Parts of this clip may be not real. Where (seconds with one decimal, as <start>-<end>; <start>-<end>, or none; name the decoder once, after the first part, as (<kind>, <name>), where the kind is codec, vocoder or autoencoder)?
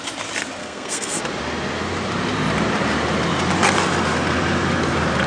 0.6-1.2 (codec, SNAC)